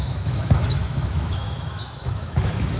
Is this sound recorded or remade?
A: remade